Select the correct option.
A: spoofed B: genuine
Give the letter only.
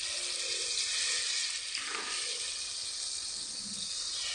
B